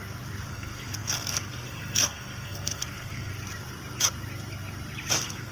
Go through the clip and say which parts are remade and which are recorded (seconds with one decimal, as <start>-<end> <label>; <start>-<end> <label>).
0.0-0.5 recorded; 0.5-3.3 remade; 3.3-5.1 recorded; 5.1-5.5 remade